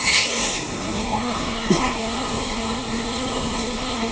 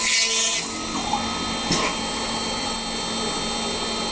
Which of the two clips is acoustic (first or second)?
second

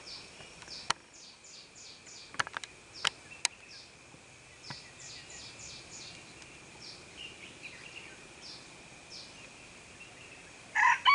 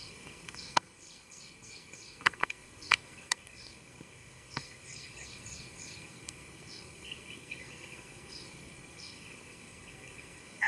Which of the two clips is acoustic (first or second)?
first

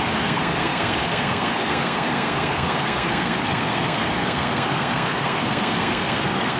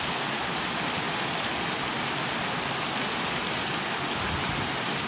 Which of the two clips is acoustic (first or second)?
second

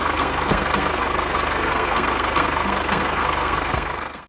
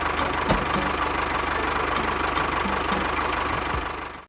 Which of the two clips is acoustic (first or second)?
second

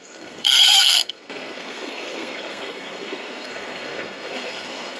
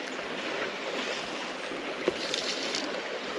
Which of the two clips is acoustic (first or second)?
second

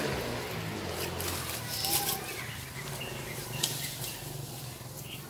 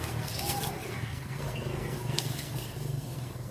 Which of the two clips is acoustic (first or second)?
first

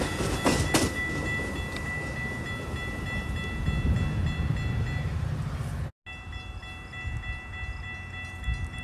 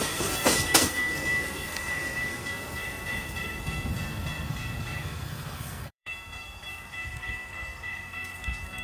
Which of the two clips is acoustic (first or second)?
first